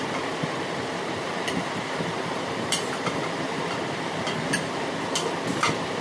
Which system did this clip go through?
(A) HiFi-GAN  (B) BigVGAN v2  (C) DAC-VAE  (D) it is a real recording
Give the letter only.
B